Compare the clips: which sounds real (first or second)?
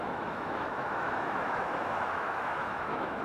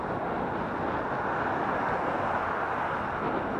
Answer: second